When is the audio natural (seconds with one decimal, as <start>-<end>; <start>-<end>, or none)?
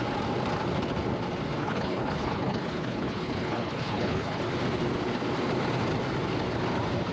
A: 0.0-1.6; 4.4-7.1